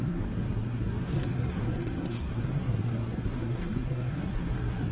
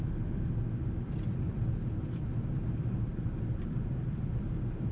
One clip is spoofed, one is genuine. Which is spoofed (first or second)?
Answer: first